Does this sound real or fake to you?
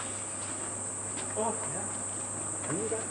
real